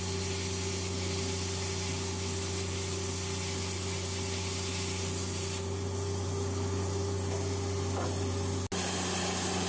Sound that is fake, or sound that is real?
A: real